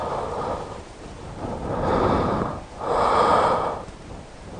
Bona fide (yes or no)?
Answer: no